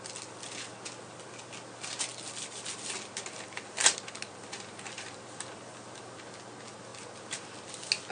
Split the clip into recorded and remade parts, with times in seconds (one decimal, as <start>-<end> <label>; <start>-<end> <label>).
0.0-8.1 recorded